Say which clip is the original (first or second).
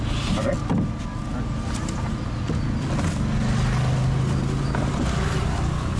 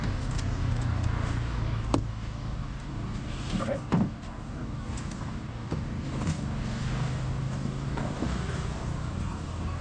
first